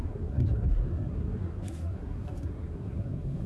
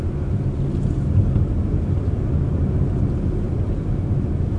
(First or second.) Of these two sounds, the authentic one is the second